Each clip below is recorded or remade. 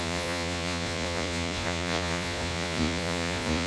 remade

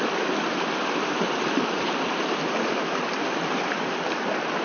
recorded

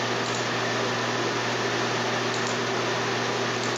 remade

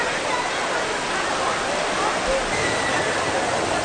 recorded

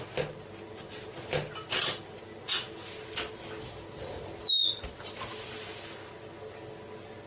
recorded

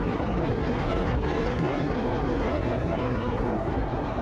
remade